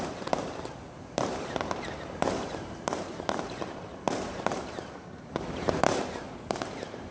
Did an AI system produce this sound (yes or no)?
yes